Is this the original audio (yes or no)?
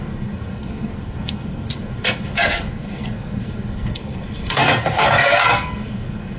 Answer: no